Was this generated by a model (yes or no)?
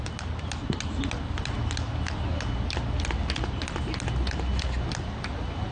no